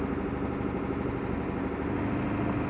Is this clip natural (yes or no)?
yes